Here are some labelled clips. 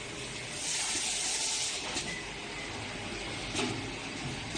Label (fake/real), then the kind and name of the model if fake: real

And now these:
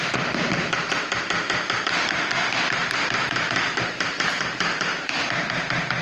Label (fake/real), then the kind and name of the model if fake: fake, vocoder, BigVGAN v2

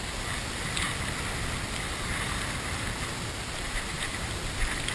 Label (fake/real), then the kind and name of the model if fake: real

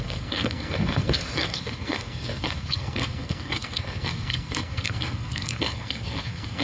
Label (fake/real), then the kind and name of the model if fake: fake, codec, SNAC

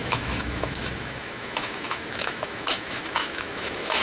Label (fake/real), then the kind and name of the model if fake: fake, autoencoder, DAC-VAE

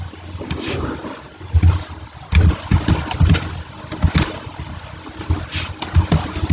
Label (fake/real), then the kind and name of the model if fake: real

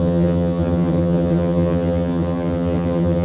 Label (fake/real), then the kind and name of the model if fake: fake, vocoder, HiFi-GAN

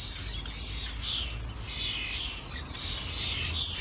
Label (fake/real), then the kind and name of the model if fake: real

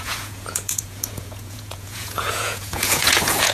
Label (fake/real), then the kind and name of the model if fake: fake, vocoder, Vocos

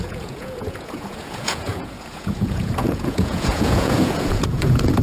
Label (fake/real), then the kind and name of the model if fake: fake, vocoder, Vocos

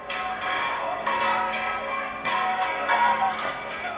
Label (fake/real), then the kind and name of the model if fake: fake, codec, SNAC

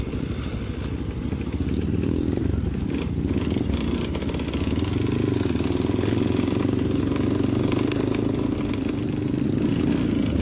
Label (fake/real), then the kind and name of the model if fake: real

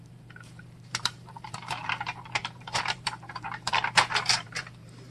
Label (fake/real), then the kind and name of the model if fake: fake, vocoder, BigVGAN v2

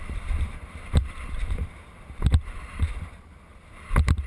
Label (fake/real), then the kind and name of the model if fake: fake, vocoder, BigVGAN v2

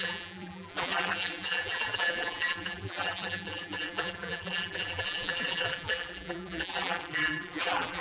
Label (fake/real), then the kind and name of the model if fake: fake, vocoder, BigVGAN v2